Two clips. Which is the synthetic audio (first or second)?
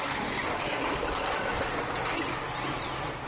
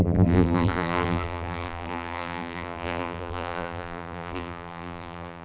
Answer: second